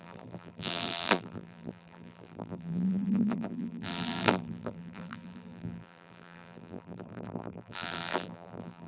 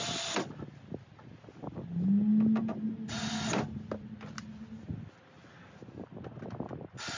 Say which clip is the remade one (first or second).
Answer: first